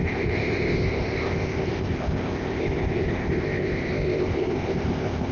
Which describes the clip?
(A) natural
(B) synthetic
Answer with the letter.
B